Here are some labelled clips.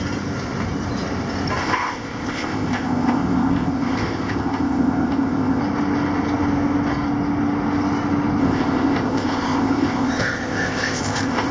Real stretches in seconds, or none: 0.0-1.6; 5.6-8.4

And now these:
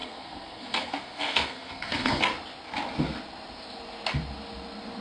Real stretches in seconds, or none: 2.2-5.0

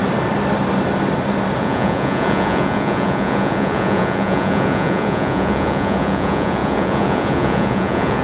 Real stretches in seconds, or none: 0.0-1.6

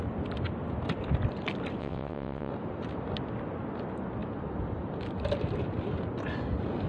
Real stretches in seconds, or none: 0.0-1.8; 2.5-6.9

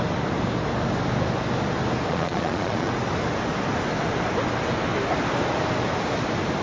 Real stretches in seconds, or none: 0.0-2.1; 2.9-6.6

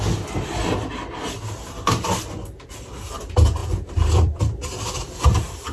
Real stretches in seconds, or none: 0.0-3.6; 5.2-5.7

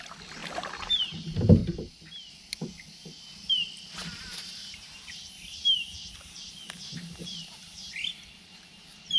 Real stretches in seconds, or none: 0.0-0.4; 1.0-4.0; 7.8-9.2

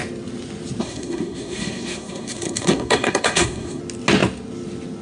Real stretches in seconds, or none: 0.0-0.8; 3.8-5.0